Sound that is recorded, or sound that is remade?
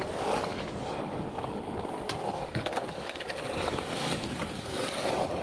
remade